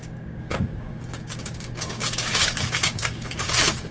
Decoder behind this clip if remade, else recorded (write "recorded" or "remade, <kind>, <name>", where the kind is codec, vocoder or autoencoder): remade, codec, DAC